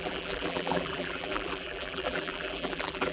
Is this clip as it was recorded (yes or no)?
no